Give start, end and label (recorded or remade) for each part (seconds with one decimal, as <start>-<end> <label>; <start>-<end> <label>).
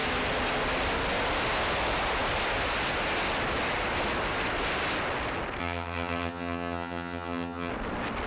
0.0-5.6 recorded; 5.6-7.7 remade; 7.7-8.3 recorded